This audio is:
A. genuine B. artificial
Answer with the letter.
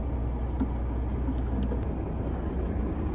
A